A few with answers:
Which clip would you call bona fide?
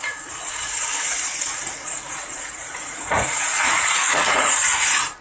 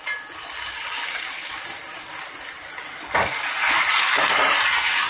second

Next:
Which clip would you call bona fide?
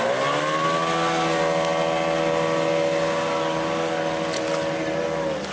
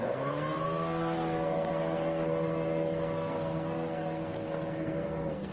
first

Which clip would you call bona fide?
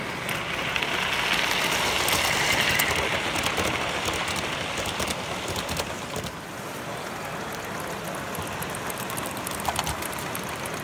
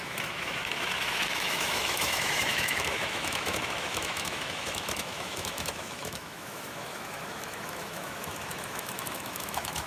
first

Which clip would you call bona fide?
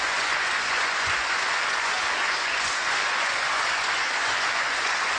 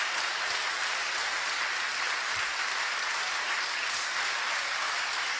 second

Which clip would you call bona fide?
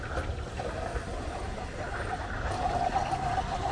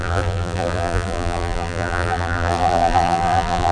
first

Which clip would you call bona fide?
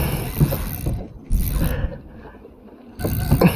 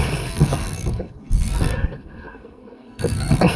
first